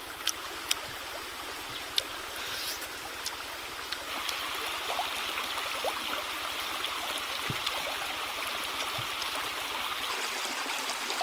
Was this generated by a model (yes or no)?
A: no